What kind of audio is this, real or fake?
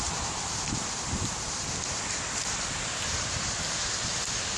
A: fake